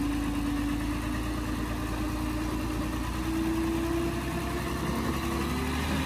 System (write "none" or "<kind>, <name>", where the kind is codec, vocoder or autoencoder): none